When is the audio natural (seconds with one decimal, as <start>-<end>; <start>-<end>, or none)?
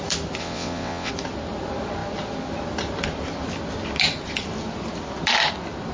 0.0-0.4; 1.1-5.9